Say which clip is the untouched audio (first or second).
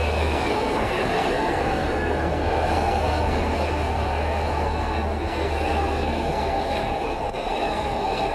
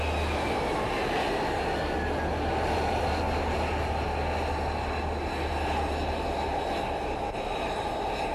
second